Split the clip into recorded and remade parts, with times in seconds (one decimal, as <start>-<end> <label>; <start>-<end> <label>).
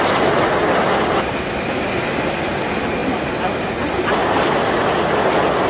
0.0-5.7 recorded